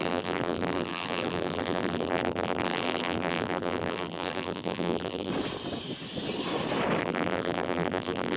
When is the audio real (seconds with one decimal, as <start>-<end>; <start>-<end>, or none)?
5.3-7.0